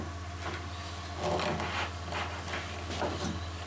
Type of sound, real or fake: real